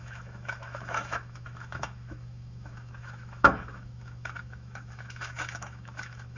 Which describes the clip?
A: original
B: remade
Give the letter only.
B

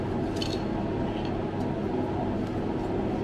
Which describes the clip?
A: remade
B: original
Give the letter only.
B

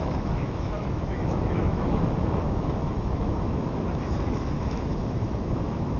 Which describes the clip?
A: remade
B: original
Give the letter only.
A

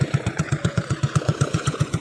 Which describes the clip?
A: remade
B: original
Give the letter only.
A